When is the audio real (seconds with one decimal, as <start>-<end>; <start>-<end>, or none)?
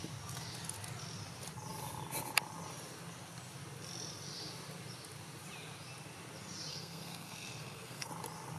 0.0-6.7; 8.1-8.6